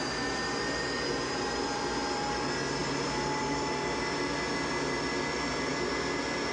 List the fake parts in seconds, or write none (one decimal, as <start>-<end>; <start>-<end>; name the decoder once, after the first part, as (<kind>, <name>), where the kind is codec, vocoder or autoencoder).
none